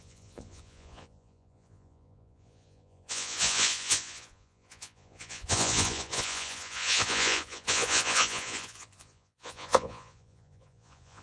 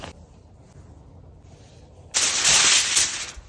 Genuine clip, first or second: second